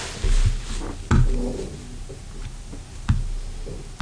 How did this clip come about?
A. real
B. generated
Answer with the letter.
A